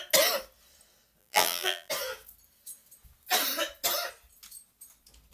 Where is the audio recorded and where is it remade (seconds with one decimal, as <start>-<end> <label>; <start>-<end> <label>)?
0.0-1.2 recorded; 1.2-1.9 remade; 1.9-5.3 recorded